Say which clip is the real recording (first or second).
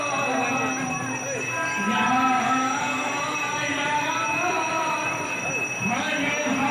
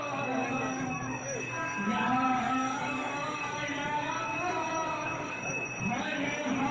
first